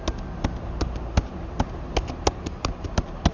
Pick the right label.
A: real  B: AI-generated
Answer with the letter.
A